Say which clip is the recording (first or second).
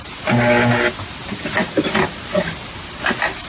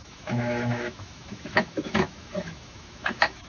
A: first